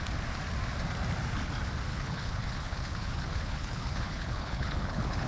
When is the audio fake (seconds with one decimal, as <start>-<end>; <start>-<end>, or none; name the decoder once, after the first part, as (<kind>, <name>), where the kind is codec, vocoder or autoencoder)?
1.9-5.3 (codec, HILCodec)